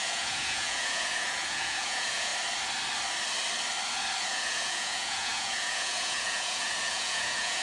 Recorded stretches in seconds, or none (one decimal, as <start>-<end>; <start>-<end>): 2.3-4.2